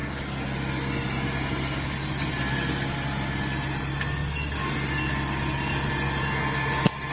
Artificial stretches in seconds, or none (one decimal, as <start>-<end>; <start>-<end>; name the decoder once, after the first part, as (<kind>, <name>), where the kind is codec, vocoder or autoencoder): none